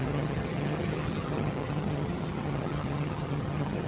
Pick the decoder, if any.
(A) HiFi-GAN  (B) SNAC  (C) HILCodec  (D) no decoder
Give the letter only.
A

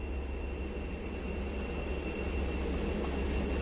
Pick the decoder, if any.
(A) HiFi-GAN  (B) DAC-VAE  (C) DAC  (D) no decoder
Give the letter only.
D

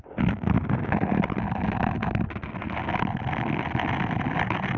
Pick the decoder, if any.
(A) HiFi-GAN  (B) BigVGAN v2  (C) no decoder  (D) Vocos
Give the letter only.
C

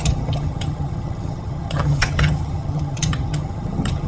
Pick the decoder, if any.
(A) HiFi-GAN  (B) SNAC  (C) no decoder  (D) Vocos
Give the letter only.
A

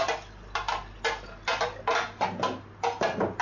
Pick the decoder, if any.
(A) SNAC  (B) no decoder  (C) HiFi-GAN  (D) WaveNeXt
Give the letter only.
B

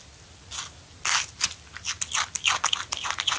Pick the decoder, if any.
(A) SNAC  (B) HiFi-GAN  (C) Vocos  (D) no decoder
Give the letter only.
D